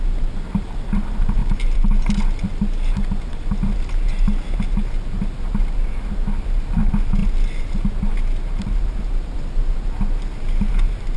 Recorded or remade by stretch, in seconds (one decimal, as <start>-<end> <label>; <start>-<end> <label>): 0.0-11.2 recorded